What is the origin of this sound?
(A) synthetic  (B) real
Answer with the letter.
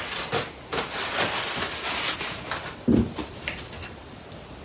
B